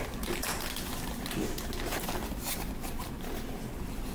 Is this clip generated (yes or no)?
no